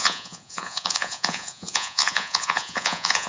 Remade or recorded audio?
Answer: remade